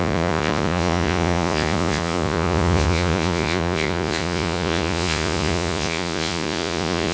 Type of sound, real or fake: fake